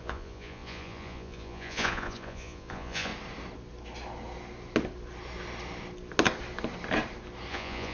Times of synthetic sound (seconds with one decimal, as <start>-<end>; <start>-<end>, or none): 0.0-3.1; 7.5-7.9